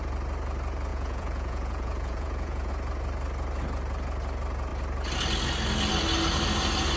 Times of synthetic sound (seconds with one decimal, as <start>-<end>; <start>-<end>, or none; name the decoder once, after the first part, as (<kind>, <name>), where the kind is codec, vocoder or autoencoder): 0.9-2.7 (vocoder, Vocos)